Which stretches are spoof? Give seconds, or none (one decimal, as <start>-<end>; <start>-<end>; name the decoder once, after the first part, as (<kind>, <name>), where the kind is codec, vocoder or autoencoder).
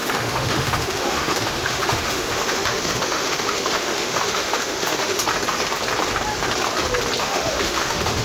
0.0-5.2 (autoencoder, DAC-VAE); 7.2-8.2